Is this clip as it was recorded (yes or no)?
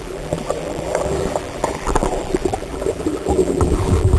no